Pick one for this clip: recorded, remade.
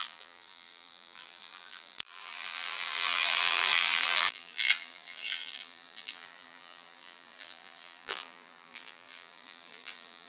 remade